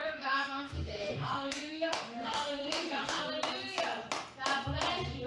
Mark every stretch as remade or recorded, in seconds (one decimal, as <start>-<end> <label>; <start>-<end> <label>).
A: 0.0-3.2 remade; 3.2-5.3 recorded